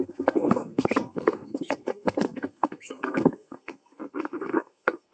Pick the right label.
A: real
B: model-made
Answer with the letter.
B